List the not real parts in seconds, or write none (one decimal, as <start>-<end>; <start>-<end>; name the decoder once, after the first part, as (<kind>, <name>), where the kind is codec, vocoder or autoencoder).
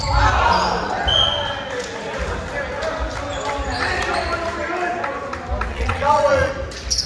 5.7-6.5 (vocoder, Vocos)